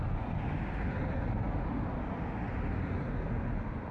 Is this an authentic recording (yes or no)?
yes